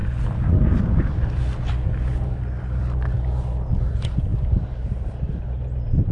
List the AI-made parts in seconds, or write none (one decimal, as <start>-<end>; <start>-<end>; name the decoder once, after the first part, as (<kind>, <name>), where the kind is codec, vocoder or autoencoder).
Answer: none